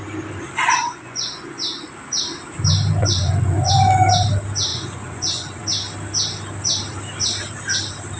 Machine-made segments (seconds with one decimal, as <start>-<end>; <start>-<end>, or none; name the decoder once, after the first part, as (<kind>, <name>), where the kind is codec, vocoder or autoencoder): 0.8-1.9 (vocoder, Vocos); 3.0-3.7; 4.7-5.6